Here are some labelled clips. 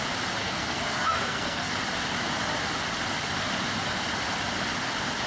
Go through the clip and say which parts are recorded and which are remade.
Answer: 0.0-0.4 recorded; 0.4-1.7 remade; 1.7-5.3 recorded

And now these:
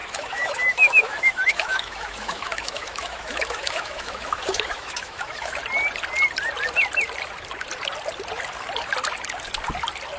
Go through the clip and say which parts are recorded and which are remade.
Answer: 0.0-5.6 remade; 5.6-10.2 recorded

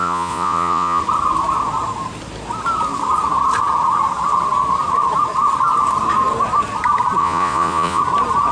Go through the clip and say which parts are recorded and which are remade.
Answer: 0.0-1.0 remade; 1.0-7.2 recorded; 7.2-8.0 remade; 8.0-8.5 recorded

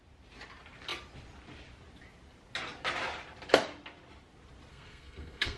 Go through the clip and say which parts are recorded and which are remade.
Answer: 0.0-4.7 recorded; 4.7-5.6 remade

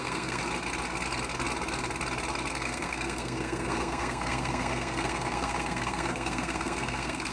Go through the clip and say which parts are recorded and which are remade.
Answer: 0.0-0.4 remade; 0.4-2.5 recorded; 2.5-7.3 remade

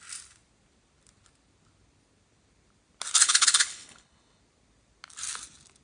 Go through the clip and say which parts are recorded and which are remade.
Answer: 0.0-3.2 recorded; 3.2-4.4 remade; 4.4-5.8 recorded

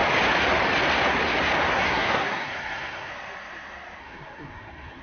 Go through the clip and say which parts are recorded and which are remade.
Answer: 0.0-1.7 recorded; 1.7-3.1 remade; 3.1-4.0 recorded; 4.0-5.0 remade

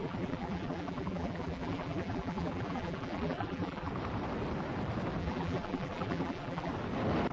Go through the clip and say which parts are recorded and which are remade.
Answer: 0.0-3.9 remade; 3.9-5.2 recorded; 5.2-6.7 remade; 6.7-7.3 recorded